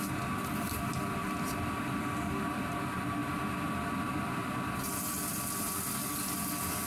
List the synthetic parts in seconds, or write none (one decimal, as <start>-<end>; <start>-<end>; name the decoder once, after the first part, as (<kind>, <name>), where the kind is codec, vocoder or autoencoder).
none